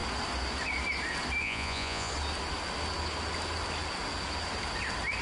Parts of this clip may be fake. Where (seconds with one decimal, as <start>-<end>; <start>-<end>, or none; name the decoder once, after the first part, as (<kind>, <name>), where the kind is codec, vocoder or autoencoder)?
1.4-2.1 (vocoder, Vocos)